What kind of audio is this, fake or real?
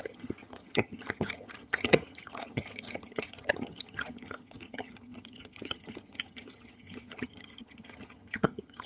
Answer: fake